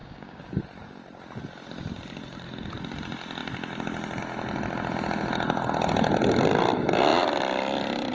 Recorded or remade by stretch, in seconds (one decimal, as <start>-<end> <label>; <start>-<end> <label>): 0.0-0.6 remade; 0.6-8.1 recorded